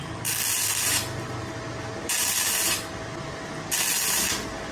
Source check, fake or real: real